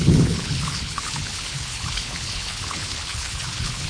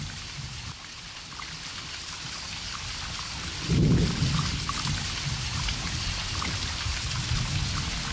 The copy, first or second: first